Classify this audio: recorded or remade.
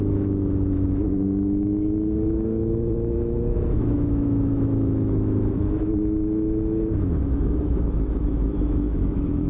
remade